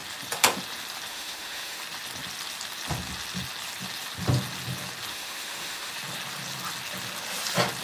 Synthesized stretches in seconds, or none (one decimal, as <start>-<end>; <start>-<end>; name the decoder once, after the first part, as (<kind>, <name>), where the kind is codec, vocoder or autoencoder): 1.1-1.8 (autoencoder, DAC-VAE); 5.1-5.9